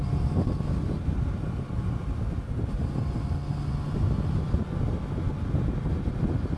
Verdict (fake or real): real